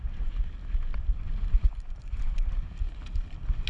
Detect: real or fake real